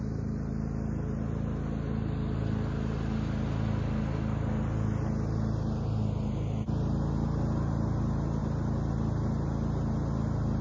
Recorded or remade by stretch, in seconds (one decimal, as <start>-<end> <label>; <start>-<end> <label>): 0.0-10.6 recorded